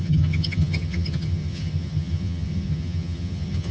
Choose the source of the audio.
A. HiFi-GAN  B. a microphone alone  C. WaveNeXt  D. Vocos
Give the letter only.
A